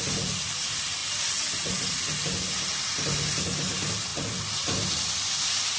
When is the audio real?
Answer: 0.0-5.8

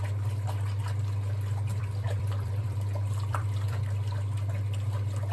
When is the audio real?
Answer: 0.0-1.7; 3.8-5.3